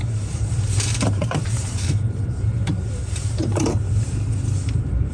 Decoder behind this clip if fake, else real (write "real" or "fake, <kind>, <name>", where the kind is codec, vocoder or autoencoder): fake, vocoder, BigVGAN v2